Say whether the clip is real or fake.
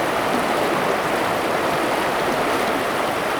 real